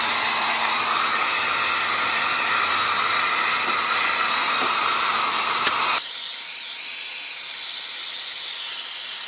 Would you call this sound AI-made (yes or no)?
no